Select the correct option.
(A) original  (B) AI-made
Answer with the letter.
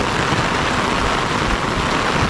A